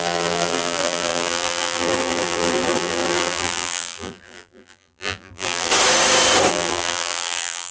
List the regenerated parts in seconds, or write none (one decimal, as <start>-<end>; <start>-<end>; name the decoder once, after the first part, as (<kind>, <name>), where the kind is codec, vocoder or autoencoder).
0.0-5.7 (vocoder, BigVGAN v2); 6.5-7.7